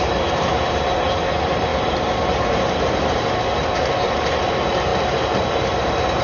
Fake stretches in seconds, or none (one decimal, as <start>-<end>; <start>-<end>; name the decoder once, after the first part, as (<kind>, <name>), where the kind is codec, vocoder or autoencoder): 0.0-4.9 (vocoder, BigVGAN v2); 5.5-6.2